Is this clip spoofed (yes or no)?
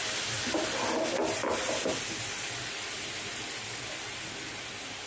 no